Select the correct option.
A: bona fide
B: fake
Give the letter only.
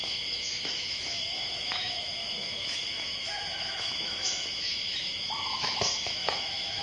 B